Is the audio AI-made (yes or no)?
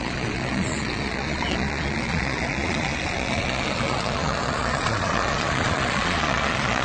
yes